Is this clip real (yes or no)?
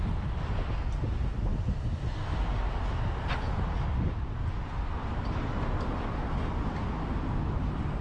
yes